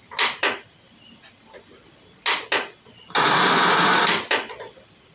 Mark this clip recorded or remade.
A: recorded